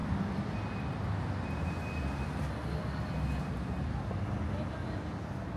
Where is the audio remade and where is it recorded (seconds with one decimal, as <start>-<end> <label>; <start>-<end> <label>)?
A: 0.0-5.6 recorded